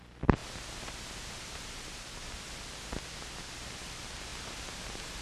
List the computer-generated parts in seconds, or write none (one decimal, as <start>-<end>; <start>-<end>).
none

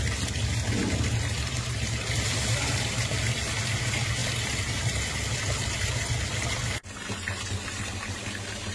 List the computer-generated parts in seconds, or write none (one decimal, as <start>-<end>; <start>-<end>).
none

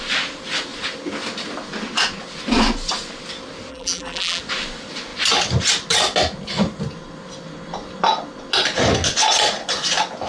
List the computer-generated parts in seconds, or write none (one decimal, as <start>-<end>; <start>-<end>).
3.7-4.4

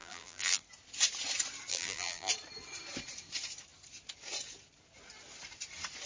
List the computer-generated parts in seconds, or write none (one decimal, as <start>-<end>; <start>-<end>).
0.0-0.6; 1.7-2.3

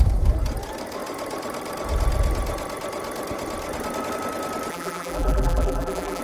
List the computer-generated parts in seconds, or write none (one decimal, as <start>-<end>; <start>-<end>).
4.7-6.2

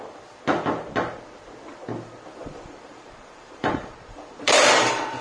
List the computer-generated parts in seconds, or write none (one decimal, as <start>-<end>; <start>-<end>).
2.4-5.2

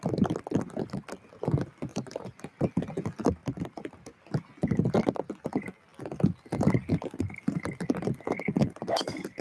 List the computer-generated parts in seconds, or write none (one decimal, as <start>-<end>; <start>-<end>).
1.9-2.5